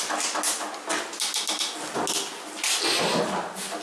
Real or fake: real